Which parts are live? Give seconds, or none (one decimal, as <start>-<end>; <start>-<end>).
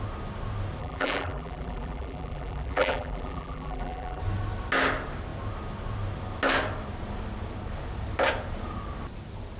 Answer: 0.0-0.8; 4.2-9.6